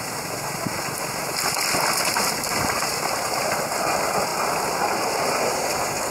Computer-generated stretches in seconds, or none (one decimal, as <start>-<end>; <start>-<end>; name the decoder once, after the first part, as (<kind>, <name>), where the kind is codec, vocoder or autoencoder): none